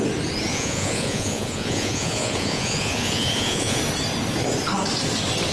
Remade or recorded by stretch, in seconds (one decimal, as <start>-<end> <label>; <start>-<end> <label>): 0.0-0.5 recorded; 0.5-3.8 remade; 3.8-5.5 recorded